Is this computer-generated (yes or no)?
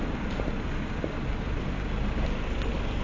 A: no